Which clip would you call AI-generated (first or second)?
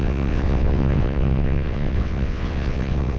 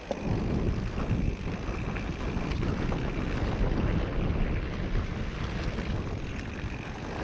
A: first